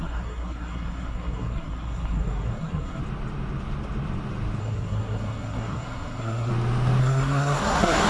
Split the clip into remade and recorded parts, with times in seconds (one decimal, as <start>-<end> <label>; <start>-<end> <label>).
0.0-3.0 remade; 3.0-4.6 recorded; 4.6-6.5 remade; 6.5-7.0 recorded; 7.0-8.1 remade